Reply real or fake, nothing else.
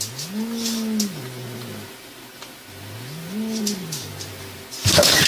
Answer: real